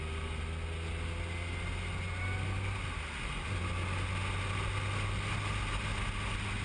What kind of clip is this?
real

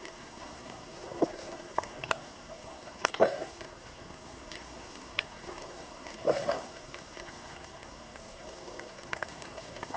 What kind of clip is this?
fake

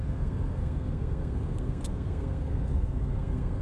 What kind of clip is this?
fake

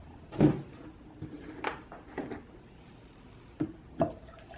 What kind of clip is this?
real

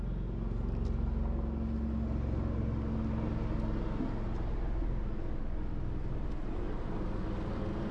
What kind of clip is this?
real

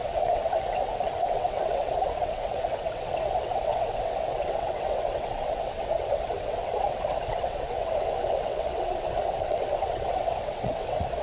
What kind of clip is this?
fake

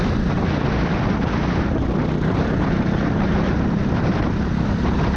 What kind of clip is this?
real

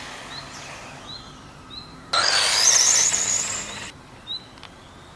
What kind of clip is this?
real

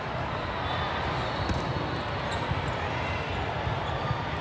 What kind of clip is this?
real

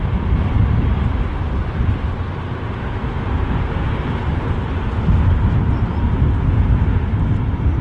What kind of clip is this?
real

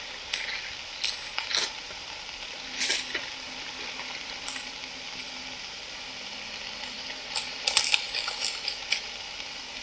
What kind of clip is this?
real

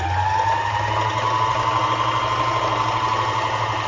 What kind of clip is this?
real